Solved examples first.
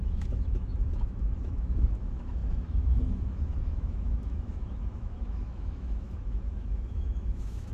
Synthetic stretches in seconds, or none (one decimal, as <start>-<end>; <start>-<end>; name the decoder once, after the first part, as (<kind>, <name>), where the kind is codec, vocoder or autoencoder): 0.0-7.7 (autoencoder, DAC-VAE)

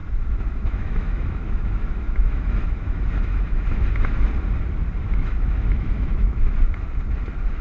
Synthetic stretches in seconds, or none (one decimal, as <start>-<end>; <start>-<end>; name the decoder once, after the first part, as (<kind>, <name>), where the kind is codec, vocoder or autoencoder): 0.0-4.3 (autoencoder, DAC-VAE); 5.0-6.6

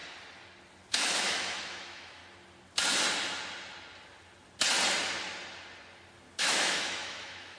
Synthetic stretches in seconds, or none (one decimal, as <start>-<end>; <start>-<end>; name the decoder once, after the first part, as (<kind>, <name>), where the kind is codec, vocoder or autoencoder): 0.9-2.2 (autoencoder, DAC-VAE); 6.4-7.6